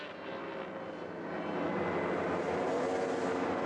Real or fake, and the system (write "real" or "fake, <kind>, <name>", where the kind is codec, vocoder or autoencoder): real